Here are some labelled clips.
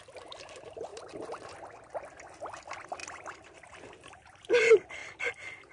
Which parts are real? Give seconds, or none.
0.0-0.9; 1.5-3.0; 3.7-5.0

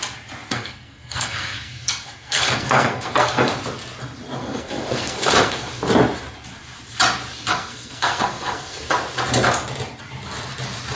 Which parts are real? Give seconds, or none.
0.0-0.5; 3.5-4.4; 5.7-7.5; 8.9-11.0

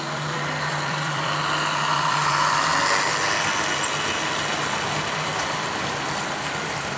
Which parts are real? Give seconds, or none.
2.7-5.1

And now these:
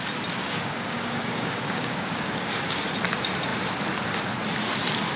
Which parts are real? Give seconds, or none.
0.0-0.4; 2.9-5.2

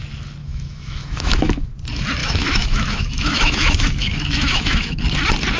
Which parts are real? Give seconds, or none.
0.0-0.4; 1.7-2.2; 5.0-5.6

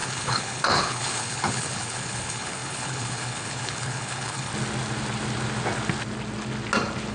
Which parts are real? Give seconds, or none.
4.5-7.1

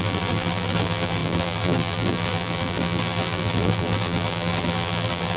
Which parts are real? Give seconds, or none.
none

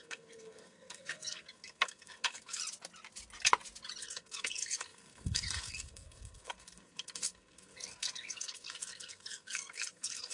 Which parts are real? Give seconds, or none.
2.6-4.0